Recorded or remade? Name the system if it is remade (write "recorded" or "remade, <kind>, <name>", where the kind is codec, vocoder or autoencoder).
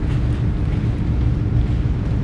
recorded